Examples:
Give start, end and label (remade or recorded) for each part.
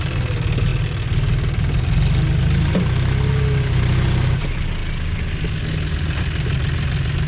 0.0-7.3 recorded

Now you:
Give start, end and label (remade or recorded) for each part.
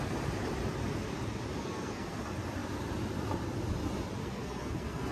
0.0-1.6 recorded; 1.6-2.2 remade; 2.2-4.2 recorded; 4.2-5.1 remade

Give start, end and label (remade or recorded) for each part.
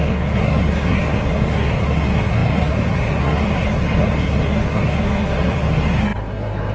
0.0-6.7 remade